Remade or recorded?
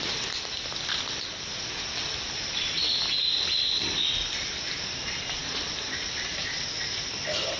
recorded